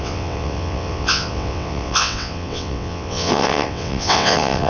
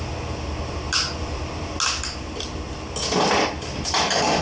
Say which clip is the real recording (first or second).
second